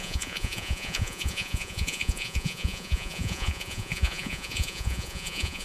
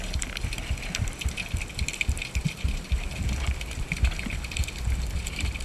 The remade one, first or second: first